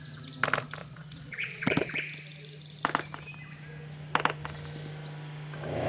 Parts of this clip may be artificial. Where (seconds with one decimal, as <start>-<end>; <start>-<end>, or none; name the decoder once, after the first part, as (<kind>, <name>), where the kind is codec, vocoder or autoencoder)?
0.8-1.9 (vocoder, Vocos)